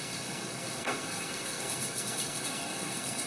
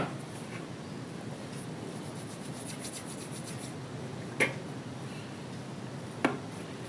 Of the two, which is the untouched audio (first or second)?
second